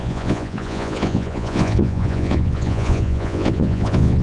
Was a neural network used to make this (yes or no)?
yes